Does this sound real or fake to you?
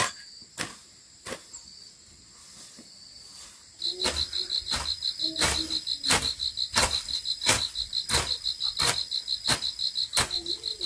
real